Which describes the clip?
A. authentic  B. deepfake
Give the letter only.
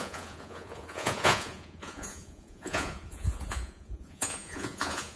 B